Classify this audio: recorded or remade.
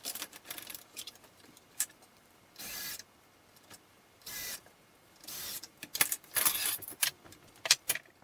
remade